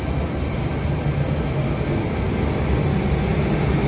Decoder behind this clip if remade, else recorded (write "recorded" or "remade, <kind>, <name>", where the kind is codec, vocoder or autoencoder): recorded